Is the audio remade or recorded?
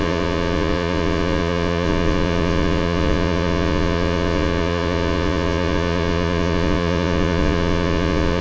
remade